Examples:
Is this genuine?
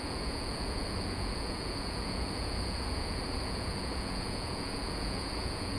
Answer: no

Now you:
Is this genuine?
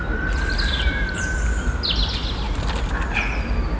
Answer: yes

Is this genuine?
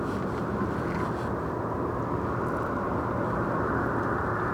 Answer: yes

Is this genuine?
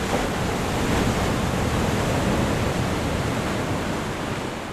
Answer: yes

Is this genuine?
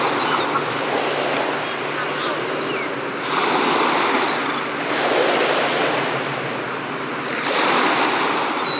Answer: yes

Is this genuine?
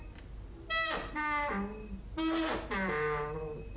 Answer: yes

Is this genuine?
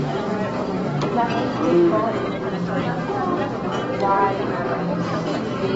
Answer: yes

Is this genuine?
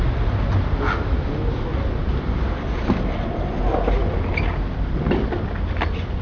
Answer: yes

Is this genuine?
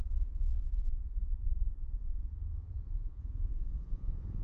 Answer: no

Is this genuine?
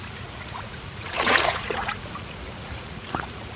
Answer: no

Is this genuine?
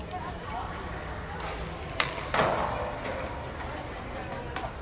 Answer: yes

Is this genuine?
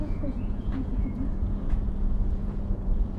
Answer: no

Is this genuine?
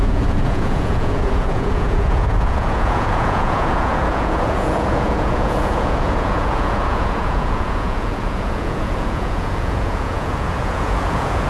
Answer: no